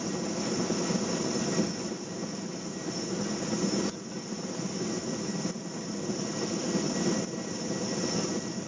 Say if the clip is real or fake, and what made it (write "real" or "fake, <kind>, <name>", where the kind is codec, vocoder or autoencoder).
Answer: real